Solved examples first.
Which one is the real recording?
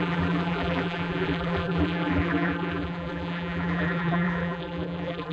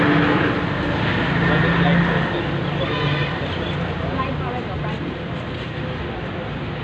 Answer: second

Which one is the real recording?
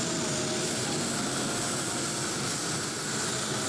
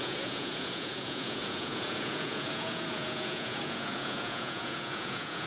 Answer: first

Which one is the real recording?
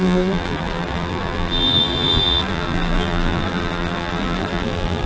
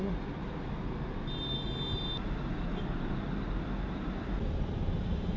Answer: second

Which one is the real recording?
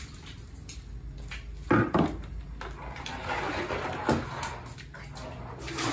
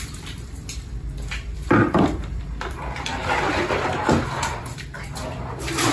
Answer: first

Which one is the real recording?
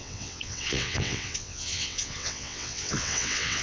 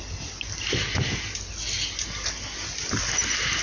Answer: second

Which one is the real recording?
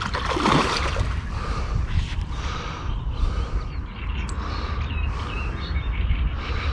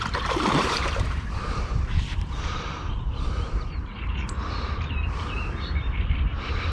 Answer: first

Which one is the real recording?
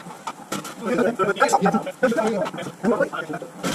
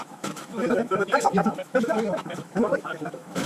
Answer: first